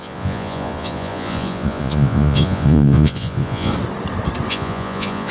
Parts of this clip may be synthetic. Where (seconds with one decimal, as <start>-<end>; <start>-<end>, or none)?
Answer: 0.0-3.7; 4.5-5.3